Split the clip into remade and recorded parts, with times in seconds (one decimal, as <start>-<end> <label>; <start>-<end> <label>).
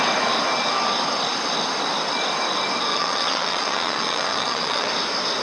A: 0.0-2.9 recorded; 2.9-4.9 remade; 4.9-5.4 recorded